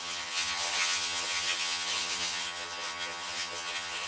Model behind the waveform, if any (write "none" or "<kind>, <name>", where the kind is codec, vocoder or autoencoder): vocoder, HiFi-GAN